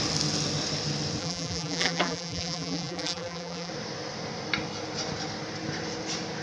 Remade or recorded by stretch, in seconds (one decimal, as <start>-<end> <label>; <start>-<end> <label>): 0.0-1.2 recorded; 1.2-3.7 remade; 3.7-6.4 recorded